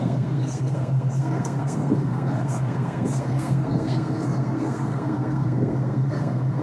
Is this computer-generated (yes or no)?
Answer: yes